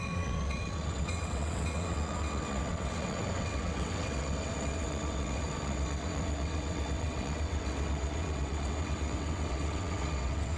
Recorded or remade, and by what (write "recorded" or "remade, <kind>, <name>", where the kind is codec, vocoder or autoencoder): remade, vocoder, WaveNeXt